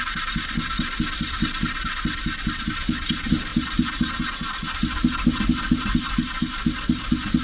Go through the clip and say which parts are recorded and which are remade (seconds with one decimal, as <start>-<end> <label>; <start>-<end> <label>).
0.0-3.5 recorded; 3.5-4.2 remade; 4.2-7.4 recorded